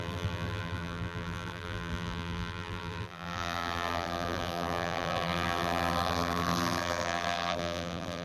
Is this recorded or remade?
remade